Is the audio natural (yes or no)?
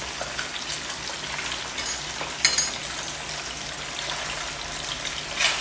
yes